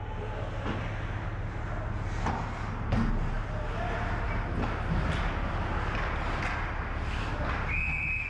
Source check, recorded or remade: recorded